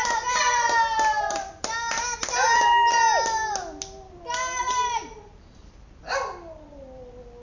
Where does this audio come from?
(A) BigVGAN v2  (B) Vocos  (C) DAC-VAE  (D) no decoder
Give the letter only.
D